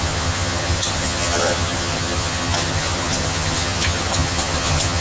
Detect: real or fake fake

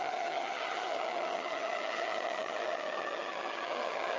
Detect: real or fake fake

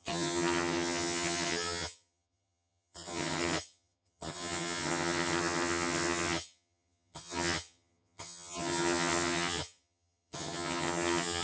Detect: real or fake fake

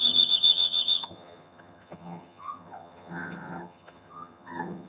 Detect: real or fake fake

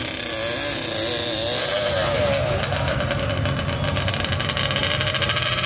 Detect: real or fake real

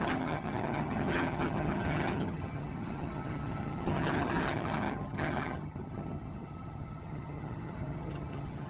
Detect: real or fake fake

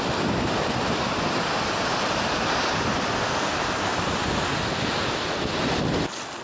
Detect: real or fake real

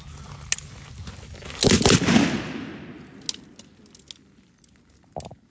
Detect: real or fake real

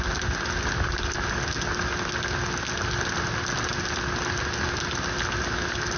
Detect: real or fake real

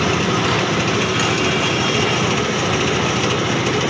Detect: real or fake real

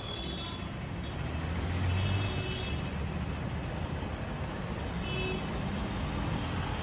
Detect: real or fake real